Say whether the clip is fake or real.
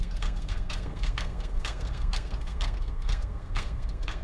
fake